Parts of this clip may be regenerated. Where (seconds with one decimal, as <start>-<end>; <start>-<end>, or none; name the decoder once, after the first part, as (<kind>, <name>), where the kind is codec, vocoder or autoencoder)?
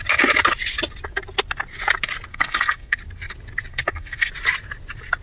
2.3-3.0 (codec, SNAC); 3.7-4.3